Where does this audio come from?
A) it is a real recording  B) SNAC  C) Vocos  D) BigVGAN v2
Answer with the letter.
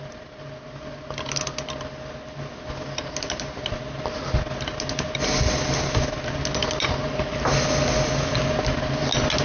A